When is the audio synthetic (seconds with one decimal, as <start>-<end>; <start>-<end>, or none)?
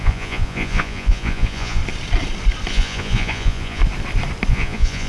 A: 0.0-1.8; 2.7-3.8; 4.5-5.1